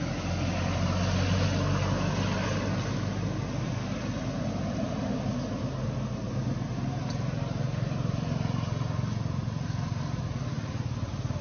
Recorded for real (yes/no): yes